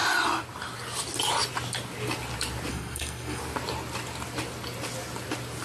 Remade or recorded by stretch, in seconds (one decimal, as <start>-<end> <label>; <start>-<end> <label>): 0.0-2.7 recorded; 2.7-3.4 remade; 3.4-5.6 recorded